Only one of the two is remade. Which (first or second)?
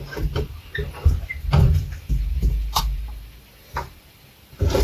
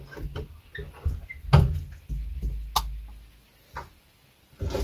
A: first